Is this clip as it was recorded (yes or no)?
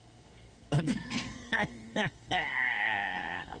no